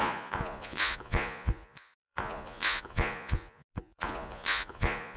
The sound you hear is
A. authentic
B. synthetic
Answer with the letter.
B